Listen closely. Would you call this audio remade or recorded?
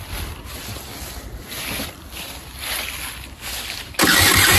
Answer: recorded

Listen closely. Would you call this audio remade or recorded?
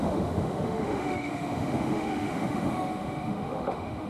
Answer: remade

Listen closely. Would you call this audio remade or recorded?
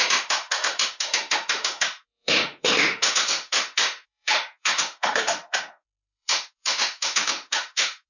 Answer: remade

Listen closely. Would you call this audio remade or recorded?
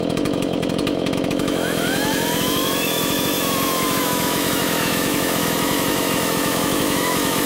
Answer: remade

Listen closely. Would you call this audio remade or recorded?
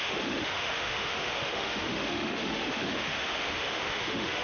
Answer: remade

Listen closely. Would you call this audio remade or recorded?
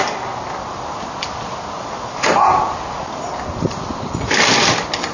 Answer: recorded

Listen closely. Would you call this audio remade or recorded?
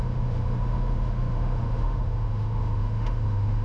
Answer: remade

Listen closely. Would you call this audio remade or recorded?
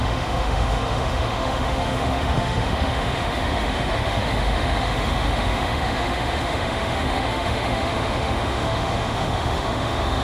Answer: remade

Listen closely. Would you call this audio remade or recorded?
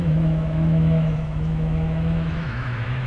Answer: remade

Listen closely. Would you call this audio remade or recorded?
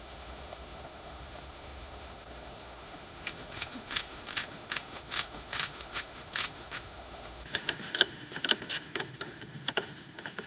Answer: remade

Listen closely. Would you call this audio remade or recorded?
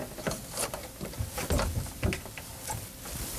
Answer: recorded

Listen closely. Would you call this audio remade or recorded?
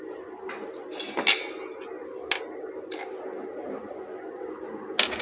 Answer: recorded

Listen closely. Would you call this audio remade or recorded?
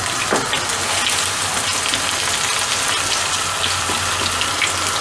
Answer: recorded